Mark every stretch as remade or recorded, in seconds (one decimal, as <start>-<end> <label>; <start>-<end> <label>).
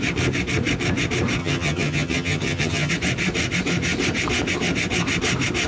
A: 0.0-1.4 recorded; 1.4-2.9 remade; 2.9-5.7 recorded